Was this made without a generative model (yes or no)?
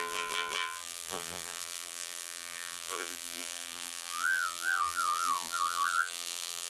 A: no